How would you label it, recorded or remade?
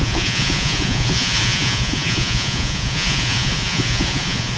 remade